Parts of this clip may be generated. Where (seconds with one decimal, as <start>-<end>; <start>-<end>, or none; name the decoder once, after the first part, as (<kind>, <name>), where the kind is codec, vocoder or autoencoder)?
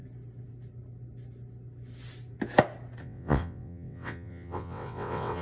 3.0-5.4 (vocoder, WaveNeXt)